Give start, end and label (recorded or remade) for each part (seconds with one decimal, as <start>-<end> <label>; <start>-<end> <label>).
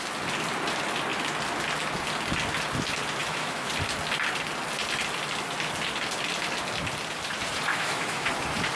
0.0-3.2 recorded; 3.2-3.7 remade; 3.7-7.7 recorded; 7.7-8.3 remade; 8.3-8.8 recorded